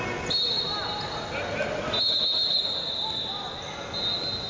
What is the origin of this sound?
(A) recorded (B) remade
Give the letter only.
A